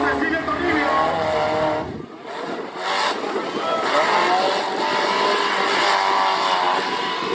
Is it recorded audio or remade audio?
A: recorded